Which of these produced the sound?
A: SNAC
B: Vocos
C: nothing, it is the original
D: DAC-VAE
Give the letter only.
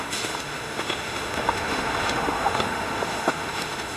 D